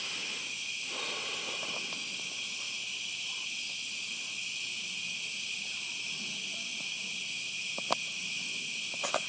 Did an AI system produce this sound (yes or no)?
no